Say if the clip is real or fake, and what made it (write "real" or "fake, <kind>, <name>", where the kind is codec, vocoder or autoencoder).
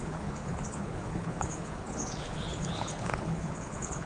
fake, codec, HILCodec